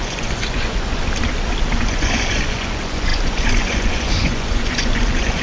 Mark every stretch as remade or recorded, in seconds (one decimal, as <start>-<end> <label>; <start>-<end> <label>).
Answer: 0.0-1.0 remade; 1.0-1.8 recorded; 1.8-5.4 remade